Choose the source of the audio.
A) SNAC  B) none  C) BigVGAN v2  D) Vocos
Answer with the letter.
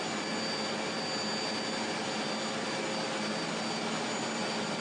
B